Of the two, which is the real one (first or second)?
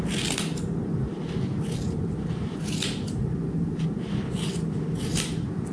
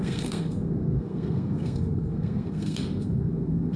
first